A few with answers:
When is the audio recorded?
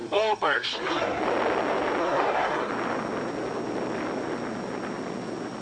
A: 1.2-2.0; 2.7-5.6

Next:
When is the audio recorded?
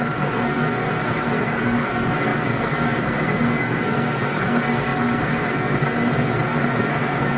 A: none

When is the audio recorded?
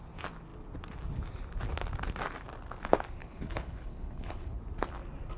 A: 0.0-3.2; 4.6-5.4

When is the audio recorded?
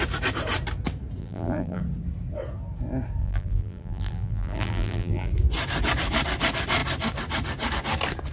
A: 0.0-1.2; 1.8-3.2; 5.3-8.3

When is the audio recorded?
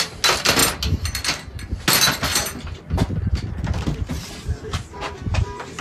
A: 0.0-5.8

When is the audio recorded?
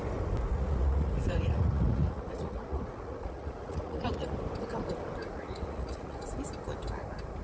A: 0.0-0.5; 4.3-5.2; 6.3-7.4